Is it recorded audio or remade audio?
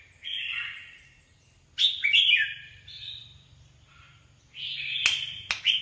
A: recorded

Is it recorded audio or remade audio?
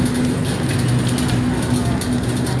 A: recorded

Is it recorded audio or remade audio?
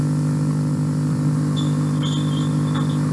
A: recorded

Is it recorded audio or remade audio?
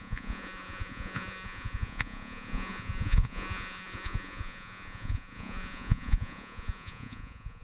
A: remade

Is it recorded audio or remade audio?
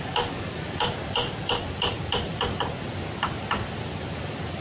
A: recorded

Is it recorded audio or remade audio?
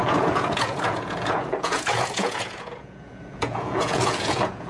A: remade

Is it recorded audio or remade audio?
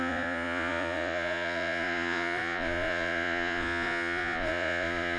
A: remade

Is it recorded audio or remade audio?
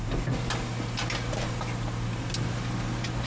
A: recorded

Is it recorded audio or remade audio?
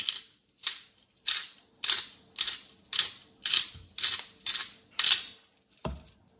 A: recorded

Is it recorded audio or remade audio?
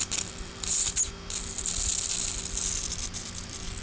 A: recorded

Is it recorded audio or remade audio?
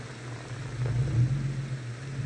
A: recorded